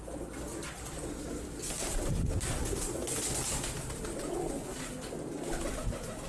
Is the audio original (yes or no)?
yes